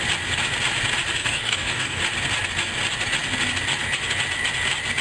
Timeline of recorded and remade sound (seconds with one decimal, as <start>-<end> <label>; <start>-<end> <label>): 0.0-1.2 recorded; 1.2-2.0 remade; 2.0-5.0 recorded